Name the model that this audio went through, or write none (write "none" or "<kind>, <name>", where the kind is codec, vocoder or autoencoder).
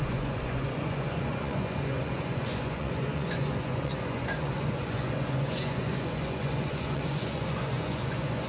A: vocoder, Vocos